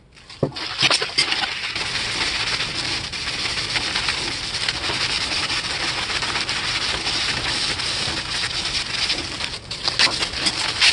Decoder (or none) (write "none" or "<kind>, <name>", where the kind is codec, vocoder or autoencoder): none